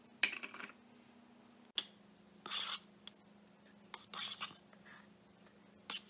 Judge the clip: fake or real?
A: real